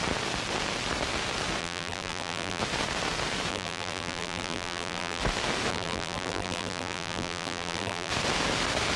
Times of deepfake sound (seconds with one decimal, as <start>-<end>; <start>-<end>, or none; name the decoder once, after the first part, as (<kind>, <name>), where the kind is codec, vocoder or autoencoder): 1.6-2.6 (vocoder, BigVGAN v2); 3.5-5.2; 5.7-8.1